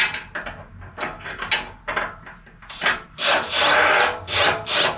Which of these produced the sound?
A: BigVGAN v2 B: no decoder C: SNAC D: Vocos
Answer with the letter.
B